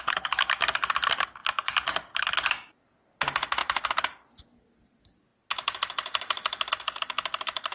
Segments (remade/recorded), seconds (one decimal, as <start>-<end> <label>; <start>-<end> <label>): 0.0-1.4 recorded; 1.4-2.3 remade; 2.3-3.6 recorded; 3.6-4.4 remade; 4.4-7.7 recorded